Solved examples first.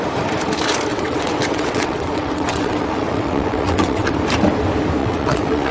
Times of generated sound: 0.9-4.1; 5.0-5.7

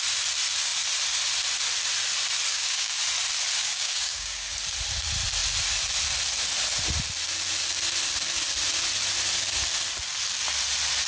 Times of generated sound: 2.5-3.0; 3.6-4.5

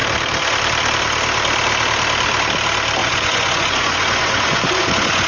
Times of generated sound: 3.0-5.3

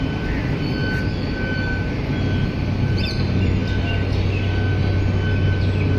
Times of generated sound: 0.0-0.8; 2.0-3.6

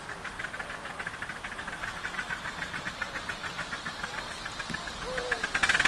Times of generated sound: 2.0-2.8

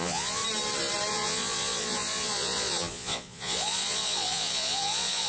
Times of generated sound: 0.0-0.4; 1.1-5.3